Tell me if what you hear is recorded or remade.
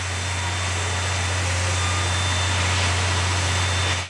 recorded